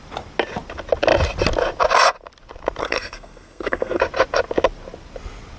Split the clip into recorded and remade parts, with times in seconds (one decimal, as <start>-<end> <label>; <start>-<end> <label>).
0.0-2.8 recorded; 2.8-4.0 remade; 4.0-5.6 recorded

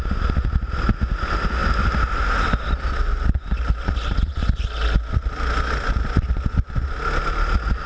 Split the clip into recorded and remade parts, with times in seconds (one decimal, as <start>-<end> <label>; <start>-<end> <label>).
0.0-7.9 recorded

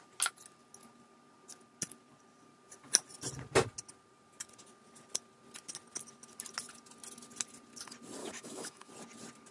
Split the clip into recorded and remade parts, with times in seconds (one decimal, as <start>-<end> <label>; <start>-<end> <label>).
0.0-8.2 recorded; 8.2-8.9 remade; 8.9-9.5 recorded

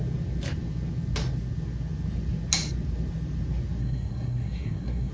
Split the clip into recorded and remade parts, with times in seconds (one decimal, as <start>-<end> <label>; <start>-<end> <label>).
0.0-3.8 recorded; 3.8-5.1 remade